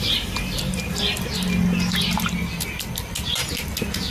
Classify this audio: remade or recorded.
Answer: recorded